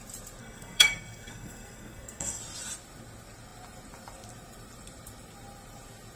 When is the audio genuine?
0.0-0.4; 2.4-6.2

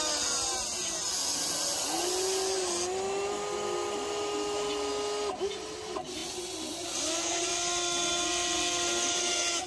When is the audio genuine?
0.0-9.7

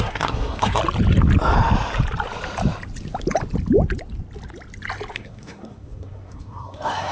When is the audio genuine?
0.8-5.1

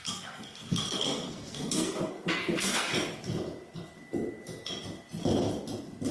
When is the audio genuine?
2.9-6.1

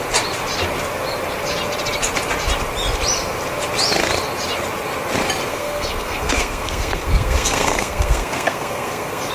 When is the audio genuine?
0.0-5.5

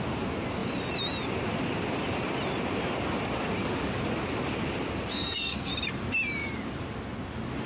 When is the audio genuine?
0.0-5.1; 5.7-7.7

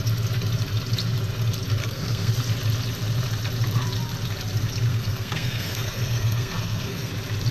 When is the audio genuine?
0.0-1.8; 2.3-4.9; 7.1-7.5